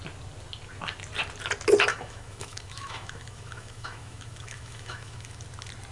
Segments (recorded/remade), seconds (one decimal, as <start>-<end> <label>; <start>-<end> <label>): 0.0-1.9 recorded; 1.9-5.4 remade; 5.4-5.9 recorded